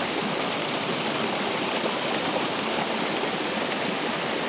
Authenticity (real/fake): real